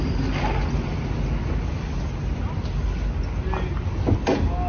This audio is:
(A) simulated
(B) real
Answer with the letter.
B